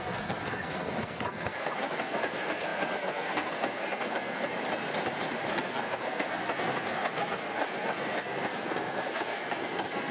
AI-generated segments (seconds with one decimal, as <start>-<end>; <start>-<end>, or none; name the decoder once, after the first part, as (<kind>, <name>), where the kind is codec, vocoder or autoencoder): 0.0-4.5 (codec, SNAC); 5.5-10.1